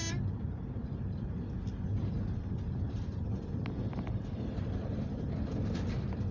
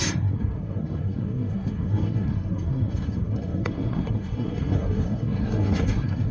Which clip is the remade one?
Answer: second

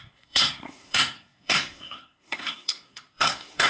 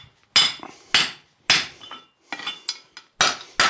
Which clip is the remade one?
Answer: first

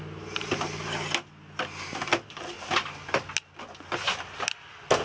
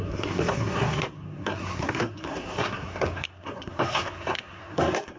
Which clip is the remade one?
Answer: second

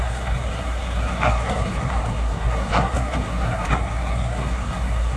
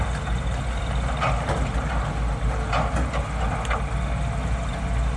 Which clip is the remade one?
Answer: first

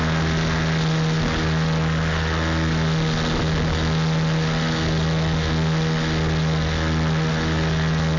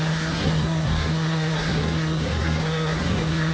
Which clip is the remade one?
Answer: second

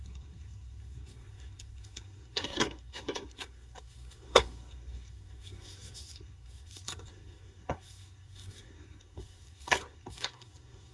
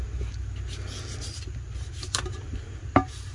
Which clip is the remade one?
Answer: first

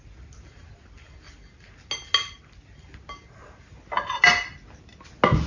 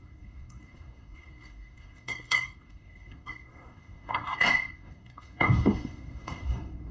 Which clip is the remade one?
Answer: second